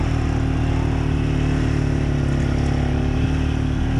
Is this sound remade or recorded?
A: recorded